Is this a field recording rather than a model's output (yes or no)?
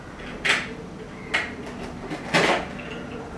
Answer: yes